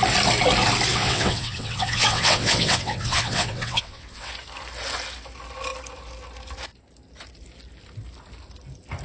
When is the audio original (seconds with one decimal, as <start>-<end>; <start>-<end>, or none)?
0.0-0.9; 4.3-9.0